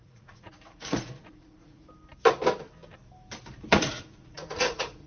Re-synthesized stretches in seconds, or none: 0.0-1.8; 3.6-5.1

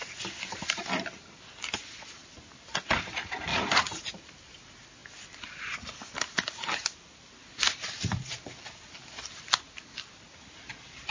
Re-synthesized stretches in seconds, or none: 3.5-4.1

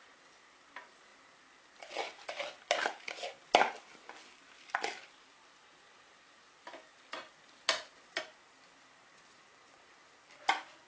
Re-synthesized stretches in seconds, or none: none

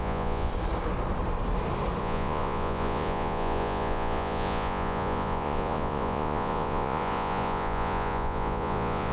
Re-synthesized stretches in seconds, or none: 0.0-0.5; 2.0-9.1

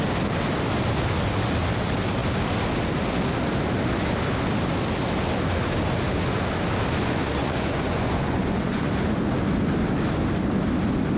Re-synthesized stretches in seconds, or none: 7.0-8.9

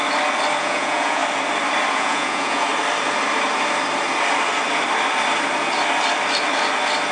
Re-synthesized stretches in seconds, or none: 0.6-1.2; 1.9-2.7

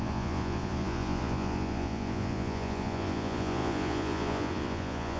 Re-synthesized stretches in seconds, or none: 0.0-5.2

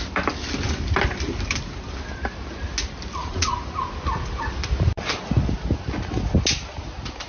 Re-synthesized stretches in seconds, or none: 3.2-3.8